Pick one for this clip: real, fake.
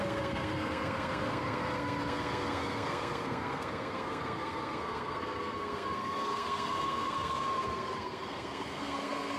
fake